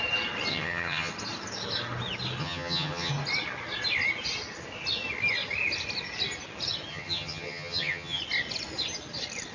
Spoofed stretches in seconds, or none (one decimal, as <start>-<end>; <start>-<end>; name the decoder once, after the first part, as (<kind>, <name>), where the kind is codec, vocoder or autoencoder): 0.5-1.1 (vocoder, HiFi-GAN); 2.4-3.1; 6.9-8.2